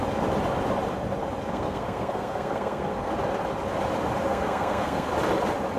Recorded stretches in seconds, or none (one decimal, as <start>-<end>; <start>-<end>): 0.0-1.5; 3.1-4.3; 5.1-5.8